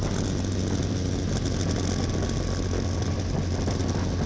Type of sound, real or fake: real